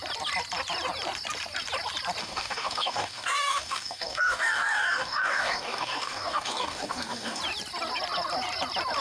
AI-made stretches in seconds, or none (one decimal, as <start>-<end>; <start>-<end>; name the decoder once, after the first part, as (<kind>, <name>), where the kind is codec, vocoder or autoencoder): 2.2-7.4 (codec, DAC)